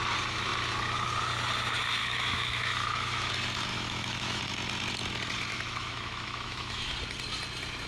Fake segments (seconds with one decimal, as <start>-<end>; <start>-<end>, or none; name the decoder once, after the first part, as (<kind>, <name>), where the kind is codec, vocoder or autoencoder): 2.0-3.3 (autoencoder, DAC-VAE); 3.7-4.4; 5.5-6.9